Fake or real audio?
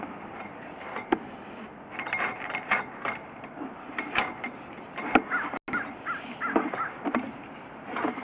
real